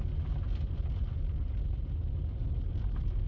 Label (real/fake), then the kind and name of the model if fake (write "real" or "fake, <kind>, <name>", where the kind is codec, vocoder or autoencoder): real